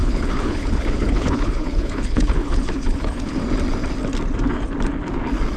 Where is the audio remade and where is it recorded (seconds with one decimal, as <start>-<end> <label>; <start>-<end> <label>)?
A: 0.0-3.4 remade; 3.4-5.6 recorded